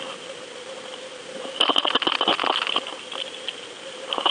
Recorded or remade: recorded